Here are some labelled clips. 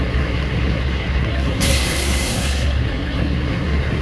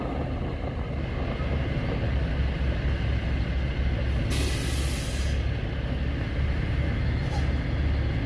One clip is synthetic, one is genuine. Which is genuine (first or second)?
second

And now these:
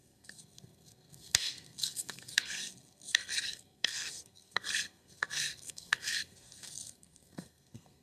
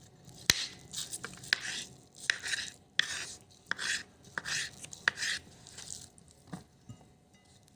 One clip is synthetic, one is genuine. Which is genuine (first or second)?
second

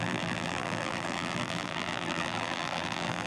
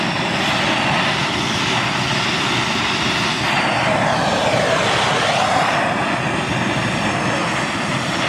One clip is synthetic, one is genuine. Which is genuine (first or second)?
second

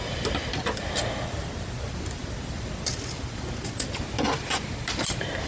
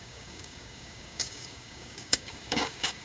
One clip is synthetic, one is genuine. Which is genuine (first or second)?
first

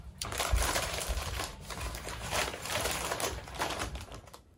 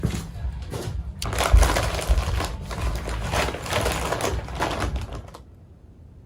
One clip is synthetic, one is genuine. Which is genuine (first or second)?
second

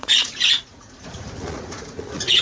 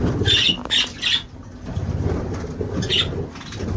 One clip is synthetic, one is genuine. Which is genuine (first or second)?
second